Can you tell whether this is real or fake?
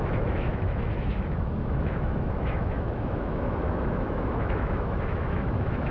fake